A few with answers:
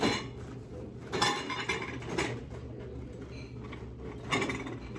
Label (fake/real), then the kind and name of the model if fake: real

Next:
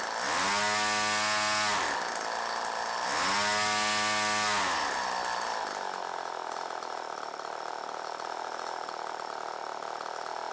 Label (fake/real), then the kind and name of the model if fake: real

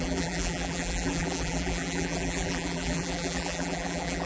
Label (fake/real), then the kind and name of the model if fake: fake, vocoder, BigVGAN v2